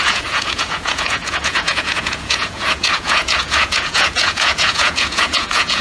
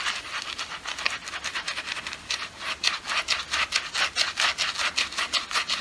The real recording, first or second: second